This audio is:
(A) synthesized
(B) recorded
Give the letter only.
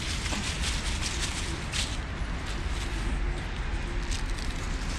B